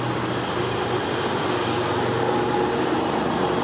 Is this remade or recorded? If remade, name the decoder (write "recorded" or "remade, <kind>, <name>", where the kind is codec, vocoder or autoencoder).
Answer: recorded